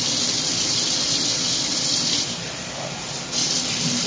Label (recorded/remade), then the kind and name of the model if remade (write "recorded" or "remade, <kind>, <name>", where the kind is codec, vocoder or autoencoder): recorded